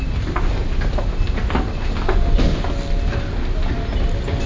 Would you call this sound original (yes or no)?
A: yes